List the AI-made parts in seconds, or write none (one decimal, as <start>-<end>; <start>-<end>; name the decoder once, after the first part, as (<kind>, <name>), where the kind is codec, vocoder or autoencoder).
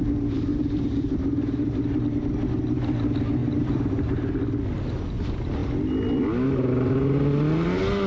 0.5-2.3 (vocoder, BigVGAN v2); 3.4-4.4